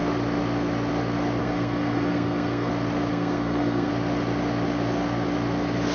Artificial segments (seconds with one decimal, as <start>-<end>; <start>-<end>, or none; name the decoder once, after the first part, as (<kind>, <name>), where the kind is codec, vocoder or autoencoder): 1.4-2.7 (codec, SNAC); 3.1-3.9

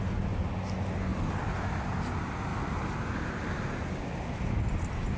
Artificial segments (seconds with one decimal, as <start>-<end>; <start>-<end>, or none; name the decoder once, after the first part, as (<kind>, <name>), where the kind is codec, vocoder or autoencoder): none

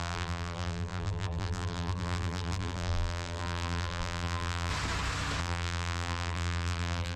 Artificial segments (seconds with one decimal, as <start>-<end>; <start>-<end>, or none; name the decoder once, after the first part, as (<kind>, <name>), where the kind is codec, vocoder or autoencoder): 0.0-4.7 (vocoder, BigVGAN v2); 5.4-7.2

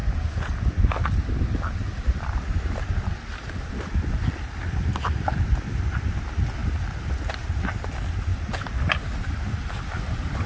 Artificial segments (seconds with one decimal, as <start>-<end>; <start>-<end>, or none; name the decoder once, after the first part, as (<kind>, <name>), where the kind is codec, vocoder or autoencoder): none

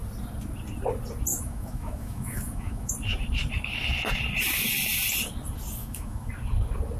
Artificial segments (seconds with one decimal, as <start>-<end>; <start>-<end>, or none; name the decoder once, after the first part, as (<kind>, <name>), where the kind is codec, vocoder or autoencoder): 1.3-2.9 (autoencoder, DAC-VAE); 5.8-6.3